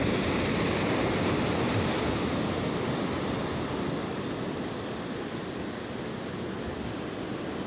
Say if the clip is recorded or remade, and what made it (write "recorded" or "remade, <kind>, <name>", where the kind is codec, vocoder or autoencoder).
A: recorded